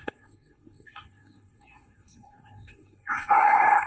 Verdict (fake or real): fake